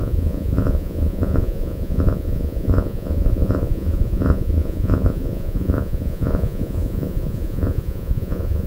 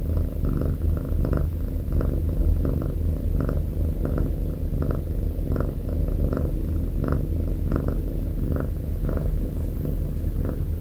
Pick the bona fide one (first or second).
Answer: second